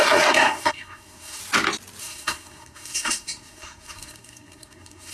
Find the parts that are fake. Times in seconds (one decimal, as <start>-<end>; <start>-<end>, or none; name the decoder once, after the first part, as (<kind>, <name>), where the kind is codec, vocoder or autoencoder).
0.0-1.4 (codec, SNAC); 2.0-5.1